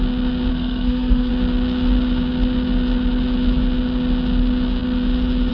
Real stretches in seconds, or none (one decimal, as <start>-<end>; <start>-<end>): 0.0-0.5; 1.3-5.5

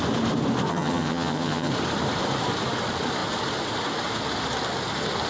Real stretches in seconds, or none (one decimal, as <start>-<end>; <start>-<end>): 0.0-0.7; 1.7-5.3

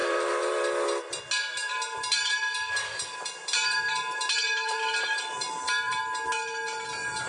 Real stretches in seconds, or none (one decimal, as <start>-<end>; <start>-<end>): 1.2-1.6; 6.0-7.3

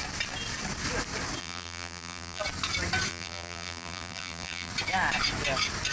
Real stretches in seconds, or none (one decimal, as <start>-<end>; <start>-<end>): 0.0-1.4; 2.4-3.1; 4.7-5.9

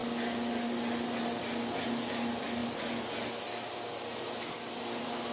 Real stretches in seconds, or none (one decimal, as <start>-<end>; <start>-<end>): 0.0-5.3

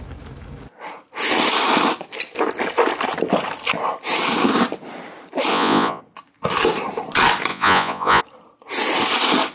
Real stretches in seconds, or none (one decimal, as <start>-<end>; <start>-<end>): 0.0-5.5; 6.0-7.5; 8.2-9.5

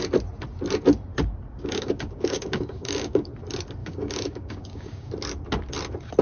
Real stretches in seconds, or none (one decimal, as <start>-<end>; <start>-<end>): 0.0-1.5; 3.3-3.8; 5.1-6.2